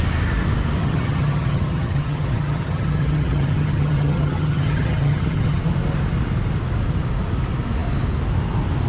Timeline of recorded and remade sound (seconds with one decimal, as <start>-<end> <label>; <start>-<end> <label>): 0.0-0.8 recorded; 0.8-5.6 remade; 5.6-8.9 recorded